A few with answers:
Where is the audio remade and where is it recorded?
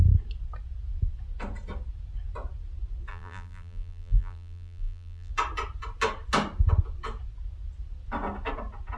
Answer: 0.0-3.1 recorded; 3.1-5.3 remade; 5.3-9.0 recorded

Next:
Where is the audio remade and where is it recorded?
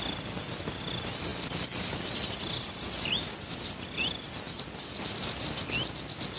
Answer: 0.0-6.4 recorded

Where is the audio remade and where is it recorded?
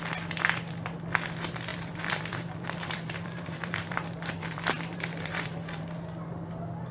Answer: 0.0-1.7 recorded; 1.7-5.8 remade; 5.8-6.9 recorded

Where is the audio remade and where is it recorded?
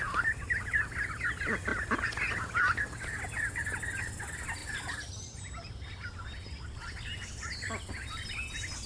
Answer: 0.0-4.6 recorded; 4.6-6.1 remade; 6.1-8.9 recorded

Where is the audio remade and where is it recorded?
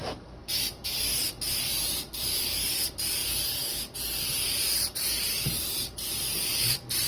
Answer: 0.0-3.2 remade; 3.2-4.4 recorded; 4.4-7.1 remade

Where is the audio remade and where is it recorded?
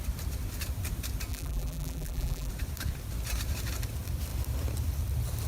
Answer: 0.0-1.3 recorded; 1.3-2.5 remade; 2.5-5.5 recorded